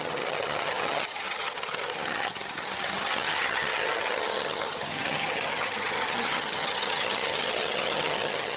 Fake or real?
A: fake